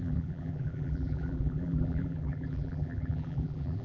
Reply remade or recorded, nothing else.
remade